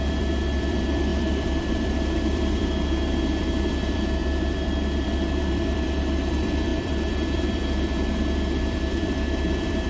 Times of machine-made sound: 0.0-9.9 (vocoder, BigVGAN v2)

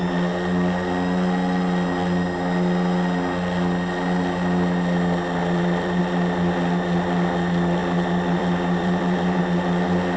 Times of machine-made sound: 5.4-6.0 (vocoder, BigVGAN v2); 7.8-9.4

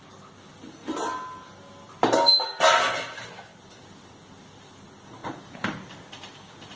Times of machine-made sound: 5.2-6.0 (vocoder, BigVGAN v2)

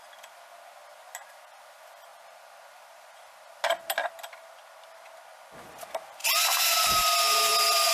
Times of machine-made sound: none